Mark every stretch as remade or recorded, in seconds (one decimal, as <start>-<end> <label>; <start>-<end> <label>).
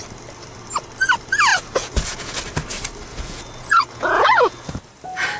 0.0-1.5 recorded; 1.5-2.4 remade; 2.4-3.1 recorded; 3.1-4.8 remade; 4.8-5.4 recorded